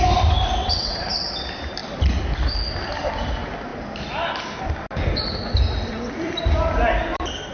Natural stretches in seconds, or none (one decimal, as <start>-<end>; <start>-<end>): 0.0-0.6; 1.1-7.5